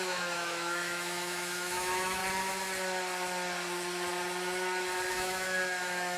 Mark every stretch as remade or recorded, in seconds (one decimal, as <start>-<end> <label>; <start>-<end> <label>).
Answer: 0.0-2.2 remade; 2.2-5.1 recorded; 5.1-6.2 remade